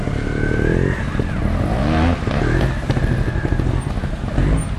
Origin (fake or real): real